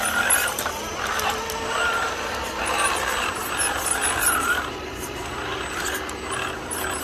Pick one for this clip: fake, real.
real